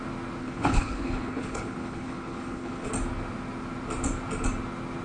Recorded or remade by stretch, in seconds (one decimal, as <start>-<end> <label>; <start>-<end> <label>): 0.0-0.4 recorded; 0.4-2.9 remade; 2.9-5.0 recorded